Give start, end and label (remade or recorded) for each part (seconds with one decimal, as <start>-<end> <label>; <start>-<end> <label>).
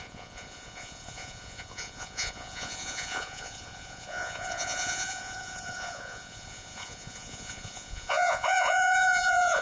0.0-9.6 remade